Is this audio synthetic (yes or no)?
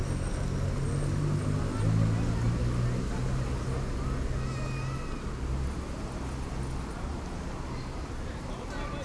no